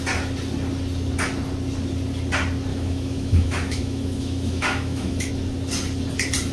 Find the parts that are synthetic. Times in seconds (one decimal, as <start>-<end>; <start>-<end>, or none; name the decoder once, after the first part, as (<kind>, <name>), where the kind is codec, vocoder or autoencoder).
2.7-5.3 (autoencoder, DAC-VAE)

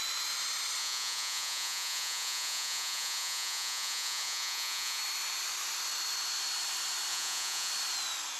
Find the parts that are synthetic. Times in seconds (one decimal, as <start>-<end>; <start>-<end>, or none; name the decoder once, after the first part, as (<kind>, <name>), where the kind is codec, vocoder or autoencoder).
0.8-5.0 (vocoder, Vocos); 7.1-7.7